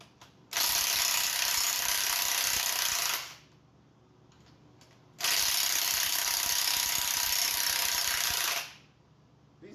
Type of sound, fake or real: real